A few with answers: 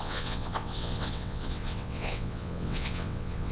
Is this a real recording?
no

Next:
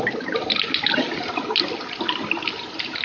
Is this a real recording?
yes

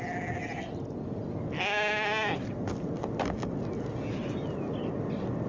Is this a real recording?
yes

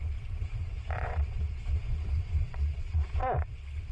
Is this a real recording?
no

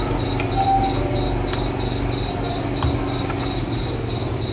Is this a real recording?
yes